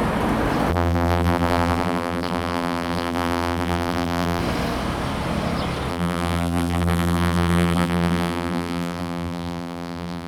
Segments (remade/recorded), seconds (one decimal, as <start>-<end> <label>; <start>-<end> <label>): 0.0-0.7 recorded; 0.7-4.4 remade; 4.4-5.9 recorded; 5.9-10.3 remade

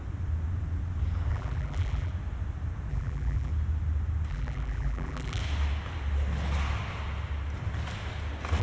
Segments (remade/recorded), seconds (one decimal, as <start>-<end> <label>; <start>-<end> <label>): 0.0-1.3 recorded; 1.3-2.1 remade; 2.1-2.9 recorded; 2.9-3.5 remade; 3.5-4.3 recorded; 4.3-5.4 remade; 5.4-8.6 recorded